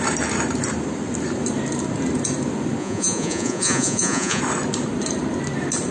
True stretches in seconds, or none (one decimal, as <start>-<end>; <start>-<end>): 0.0-2.8; 4.4-5.9

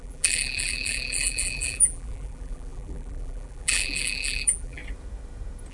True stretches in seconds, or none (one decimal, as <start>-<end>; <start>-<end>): 4.8-5.7

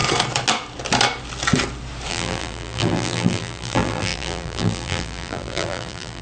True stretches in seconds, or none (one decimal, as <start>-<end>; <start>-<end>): 0.0-2.1

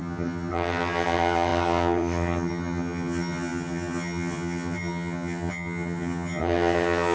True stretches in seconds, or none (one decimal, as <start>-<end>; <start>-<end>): none

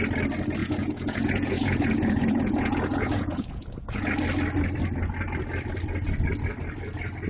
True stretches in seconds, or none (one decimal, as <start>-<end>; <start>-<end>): 0.0-0.6; 4.1-7.3

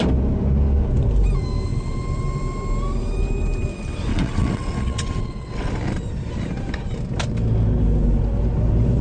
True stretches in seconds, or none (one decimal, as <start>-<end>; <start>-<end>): 0.0-4.1; 5.7-9.0

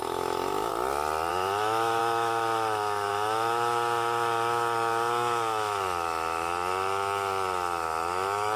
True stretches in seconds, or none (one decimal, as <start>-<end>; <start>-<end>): 0.7-1.3

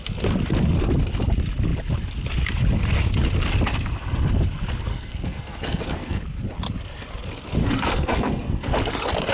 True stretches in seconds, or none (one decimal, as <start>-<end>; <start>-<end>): 0.0-4.9; 6.2-7.6; 8.7-9.3